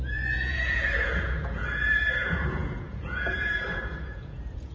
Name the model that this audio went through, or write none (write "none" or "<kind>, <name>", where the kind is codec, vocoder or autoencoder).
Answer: vocoder, Vocos